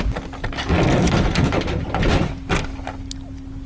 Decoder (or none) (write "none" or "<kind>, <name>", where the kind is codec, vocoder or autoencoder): none